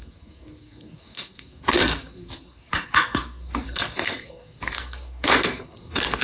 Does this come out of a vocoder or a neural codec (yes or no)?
yes